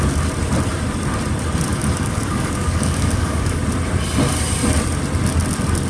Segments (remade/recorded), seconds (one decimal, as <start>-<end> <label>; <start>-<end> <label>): 0.0-1.7 recorded; 1.7-3.6 remade; 3.6-5.9 recorded